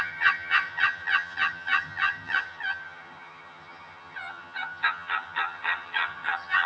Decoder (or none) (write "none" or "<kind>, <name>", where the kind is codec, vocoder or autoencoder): vocoder, HiFi-GAN